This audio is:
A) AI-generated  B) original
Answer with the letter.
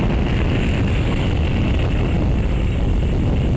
B